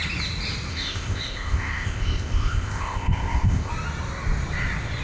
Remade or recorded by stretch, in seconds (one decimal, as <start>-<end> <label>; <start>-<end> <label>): 0.0-0.7 recorded; 0.7-3.7 remade; 3.7-5.0 recorded